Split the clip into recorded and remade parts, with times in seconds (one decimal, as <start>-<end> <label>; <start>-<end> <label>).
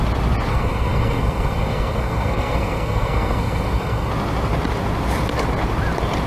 0.0-0.5 recorded; 0.5-4.1 remade; 4.1-6.3 recorded